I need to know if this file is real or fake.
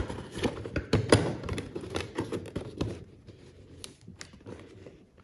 fake